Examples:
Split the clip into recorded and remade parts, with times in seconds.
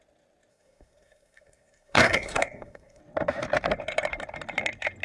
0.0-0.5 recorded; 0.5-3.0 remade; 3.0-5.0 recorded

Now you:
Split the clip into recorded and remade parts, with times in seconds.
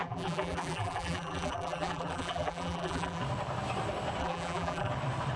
0.0-3.2 remade; 3.2-4.2 recorded; 4.2-4.9 remade; 4.9-5.4 recorded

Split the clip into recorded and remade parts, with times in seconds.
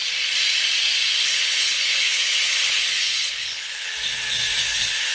0.0-1.1 recorded; 1.1-3.9 remade; 3.9-4.6 recorded; 4.6-5.1 remade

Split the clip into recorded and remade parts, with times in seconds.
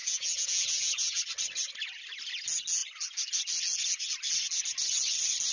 0.0-1.2 remade; 1.2-5.5 recorded